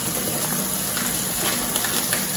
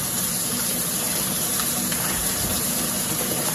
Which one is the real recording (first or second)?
first